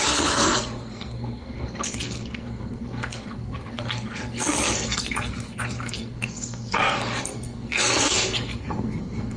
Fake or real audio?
fake